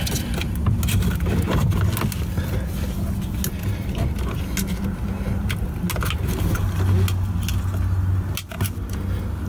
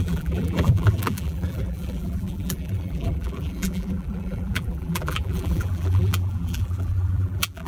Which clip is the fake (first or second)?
second